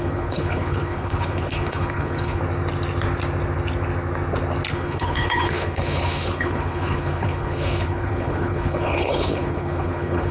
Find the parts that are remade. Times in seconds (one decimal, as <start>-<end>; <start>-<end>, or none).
0.0-2.4; 4.7-10.3